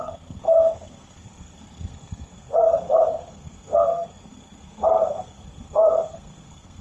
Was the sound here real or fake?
fake